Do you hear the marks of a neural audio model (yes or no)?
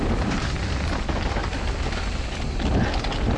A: no